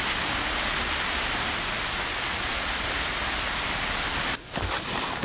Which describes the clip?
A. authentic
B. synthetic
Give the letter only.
A